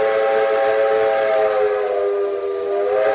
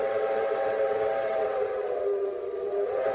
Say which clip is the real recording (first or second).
first